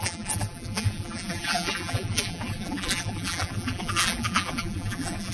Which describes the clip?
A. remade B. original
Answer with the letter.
A